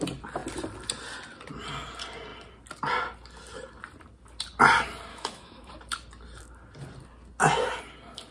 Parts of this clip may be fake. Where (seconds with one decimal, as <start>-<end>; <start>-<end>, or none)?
5.1-5.7